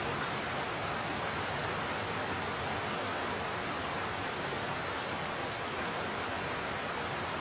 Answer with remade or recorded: recorded